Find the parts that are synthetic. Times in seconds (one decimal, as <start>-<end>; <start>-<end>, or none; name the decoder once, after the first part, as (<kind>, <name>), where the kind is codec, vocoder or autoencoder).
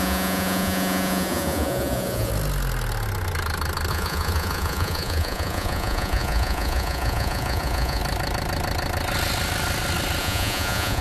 0.0-2.3 (vocoder, Vocos); 3.9-8.0; 10.2-11.0